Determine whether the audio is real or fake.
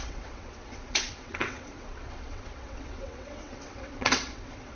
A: fake